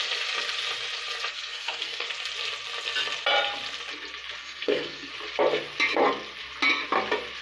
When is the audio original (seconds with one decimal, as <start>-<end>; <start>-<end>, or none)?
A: 0.0-1.3; 2.1-4.4; 5.1-7.4